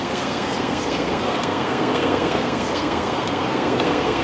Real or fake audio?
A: fake